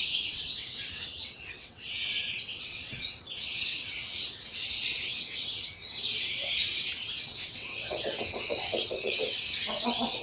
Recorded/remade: remade